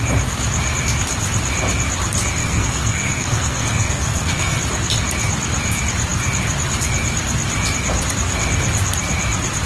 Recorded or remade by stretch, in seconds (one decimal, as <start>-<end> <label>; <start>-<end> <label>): 0.0-2.4 recorded; 2.4-4.6 remade; 4.6-9.7 recorded